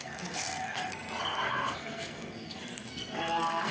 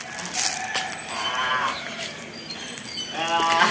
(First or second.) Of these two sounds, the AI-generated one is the first